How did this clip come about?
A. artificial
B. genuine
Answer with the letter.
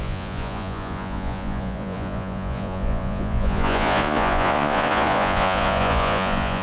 A